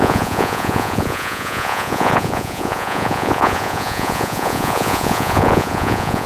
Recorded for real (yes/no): no